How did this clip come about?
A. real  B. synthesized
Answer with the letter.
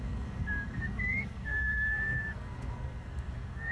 B